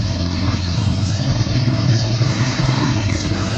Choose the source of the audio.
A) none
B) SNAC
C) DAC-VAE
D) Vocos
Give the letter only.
B